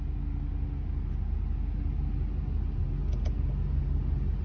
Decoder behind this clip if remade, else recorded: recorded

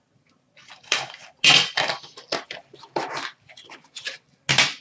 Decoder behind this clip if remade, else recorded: recorded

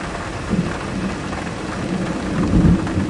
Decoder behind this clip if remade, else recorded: recorded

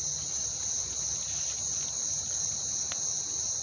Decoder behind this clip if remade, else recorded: recorded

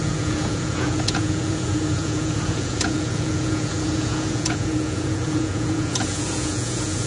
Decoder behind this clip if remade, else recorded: remade, vocoder, Vocos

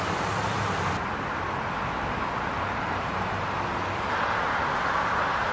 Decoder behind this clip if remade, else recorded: recorded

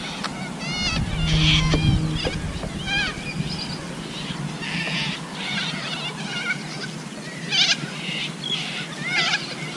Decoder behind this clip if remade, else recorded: recorded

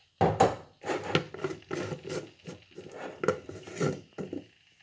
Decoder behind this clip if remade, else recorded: recorded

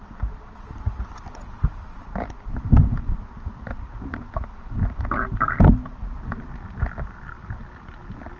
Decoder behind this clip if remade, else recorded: remade, vocoder, BigVGAN v2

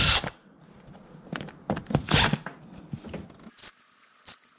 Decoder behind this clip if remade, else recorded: recorded